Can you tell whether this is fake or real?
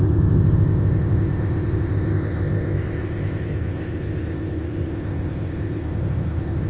fake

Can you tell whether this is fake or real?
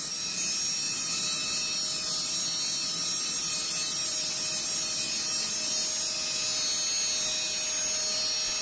real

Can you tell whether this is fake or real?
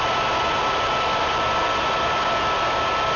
real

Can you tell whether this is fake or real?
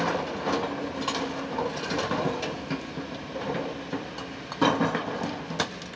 real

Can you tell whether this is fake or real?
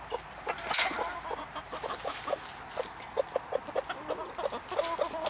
real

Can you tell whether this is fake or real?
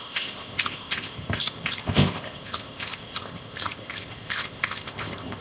fake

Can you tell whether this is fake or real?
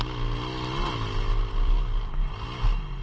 real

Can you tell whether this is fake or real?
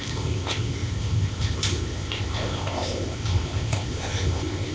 fake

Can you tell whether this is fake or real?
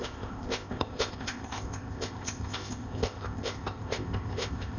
fake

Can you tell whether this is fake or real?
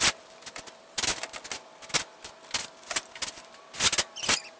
real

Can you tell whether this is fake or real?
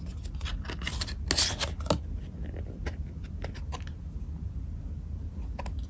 real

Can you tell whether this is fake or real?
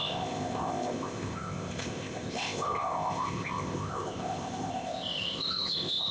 fake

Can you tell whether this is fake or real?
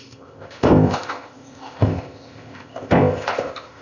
fake